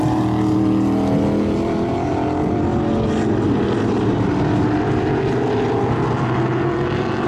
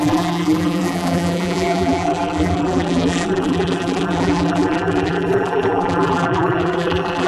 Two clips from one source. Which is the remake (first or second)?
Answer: second